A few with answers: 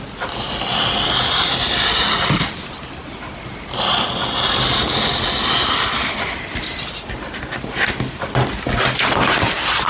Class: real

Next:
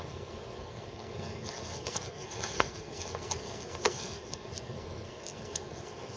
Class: fake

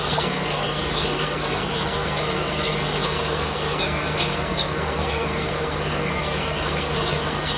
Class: fake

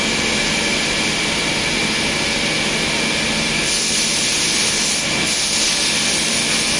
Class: real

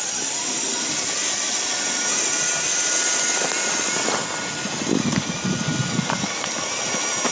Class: real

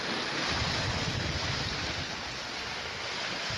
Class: real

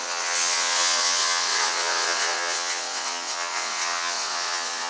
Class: fake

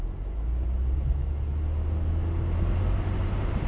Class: real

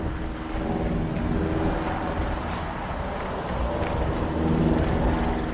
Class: real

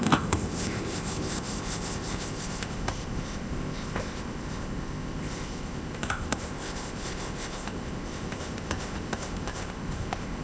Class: fake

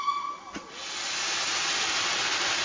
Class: real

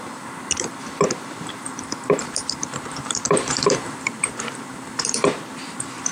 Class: fake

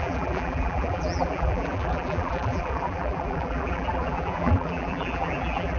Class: fake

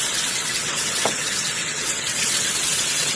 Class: fake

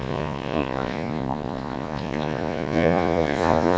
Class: fake